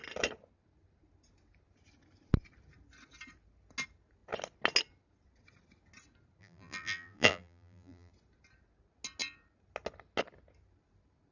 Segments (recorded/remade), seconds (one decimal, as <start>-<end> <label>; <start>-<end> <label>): 0.0-6.4 recorded; 6.4-8.1 remade; 8.1-11.3 recorded